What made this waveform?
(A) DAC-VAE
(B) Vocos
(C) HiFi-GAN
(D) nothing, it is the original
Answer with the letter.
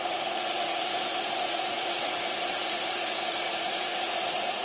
B